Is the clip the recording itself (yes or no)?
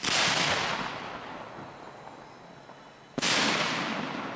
yes